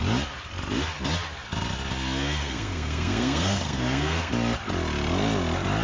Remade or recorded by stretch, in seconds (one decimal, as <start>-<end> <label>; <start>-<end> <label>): 0.0-2.4 recorded; 2.4-4.3 remade; 4.3-5.8 recorded